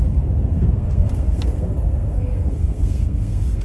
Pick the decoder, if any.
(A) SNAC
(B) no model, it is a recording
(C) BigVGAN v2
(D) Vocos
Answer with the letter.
A